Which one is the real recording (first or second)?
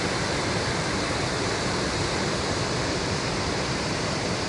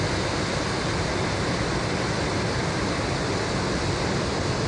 second